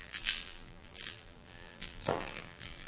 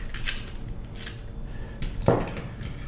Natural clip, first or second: second